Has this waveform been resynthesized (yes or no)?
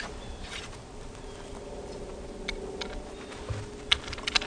no